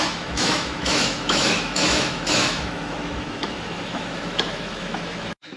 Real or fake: fake